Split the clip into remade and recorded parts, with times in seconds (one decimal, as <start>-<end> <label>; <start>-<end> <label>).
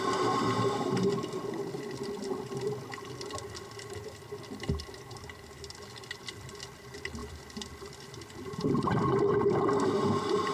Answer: 0.0-7.2 recorded; 7.2-9.6 remade; 9.6-10.5 recorded